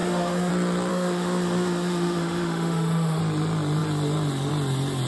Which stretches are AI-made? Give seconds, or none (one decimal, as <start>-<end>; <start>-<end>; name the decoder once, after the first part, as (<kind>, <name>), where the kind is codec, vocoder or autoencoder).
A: 0.0-0.5 (autoencoder, DAC-VAE); 0.9-3.2